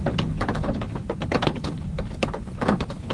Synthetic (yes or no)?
yes